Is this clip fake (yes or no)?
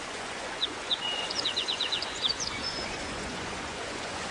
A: yes